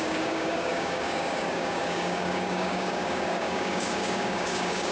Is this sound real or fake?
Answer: fake